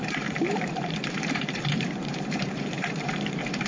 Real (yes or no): no